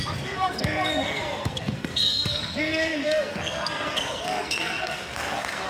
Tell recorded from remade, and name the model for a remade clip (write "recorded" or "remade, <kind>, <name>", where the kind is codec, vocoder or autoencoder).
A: remade, codec, SNAC